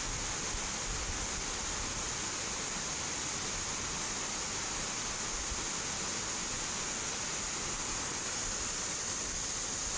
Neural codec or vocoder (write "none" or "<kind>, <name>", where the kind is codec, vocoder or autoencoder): none